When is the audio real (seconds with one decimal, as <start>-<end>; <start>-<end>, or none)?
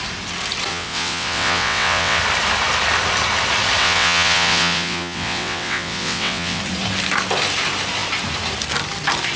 0.0-0.7; 2.2-3.8; 6.6-9.4